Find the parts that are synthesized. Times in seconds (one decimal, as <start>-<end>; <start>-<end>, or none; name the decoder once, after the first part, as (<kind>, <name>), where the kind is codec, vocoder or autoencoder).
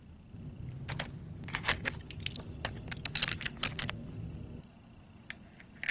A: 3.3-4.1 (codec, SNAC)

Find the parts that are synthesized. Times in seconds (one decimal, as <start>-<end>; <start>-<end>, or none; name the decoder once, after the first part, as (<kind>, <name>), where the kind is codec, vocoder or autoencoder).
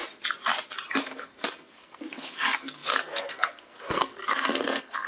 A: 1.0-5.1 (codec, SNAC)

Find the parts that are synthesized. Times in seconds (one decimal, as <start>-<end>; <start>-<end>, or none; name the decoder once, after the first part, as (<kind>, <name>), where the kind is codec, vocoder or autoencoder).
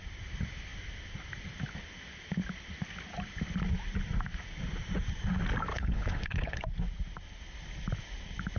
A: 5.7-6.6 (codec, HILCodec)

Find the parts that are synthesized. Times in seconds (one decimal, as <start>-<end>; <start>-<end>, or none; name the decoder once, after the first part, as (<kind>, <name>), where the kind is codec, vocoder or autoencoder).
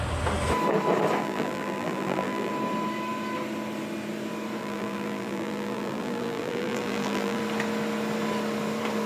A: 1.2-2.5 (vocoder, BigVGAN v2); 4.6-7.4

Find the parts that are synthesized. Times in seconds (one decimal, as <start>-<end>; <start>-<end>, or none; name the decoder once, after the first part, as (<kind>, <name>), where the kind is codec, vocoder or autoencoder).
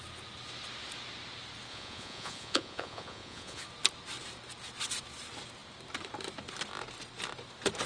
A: 1.7-3.6 (vocoder, Vocos)